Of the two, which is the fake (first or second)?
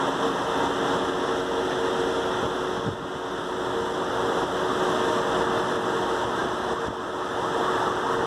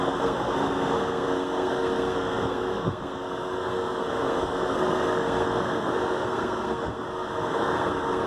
second